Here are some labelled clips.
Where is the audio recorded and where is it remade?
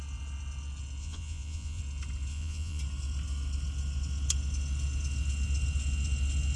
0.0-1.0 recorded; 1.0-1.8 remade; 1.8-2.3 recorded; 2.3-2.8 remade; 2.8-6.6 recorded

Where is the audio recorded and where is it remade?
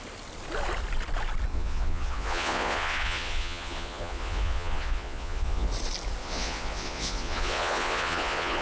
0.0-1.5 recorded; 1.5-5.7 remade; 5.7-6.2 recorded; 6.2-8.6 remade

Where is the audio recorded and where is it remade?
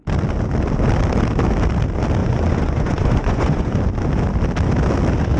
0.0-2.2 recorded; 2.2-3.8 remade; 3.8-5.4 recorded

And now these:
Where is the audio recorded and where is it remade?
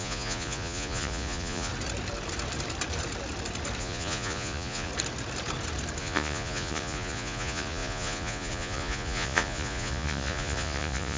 0.0-1.7 remade; 1.7-3.8 recorded; 3.8-4.9 remade; 4.9-6.0 recorded; 6.0-11.2 remade